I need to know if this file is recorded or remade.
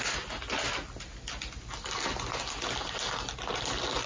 recorded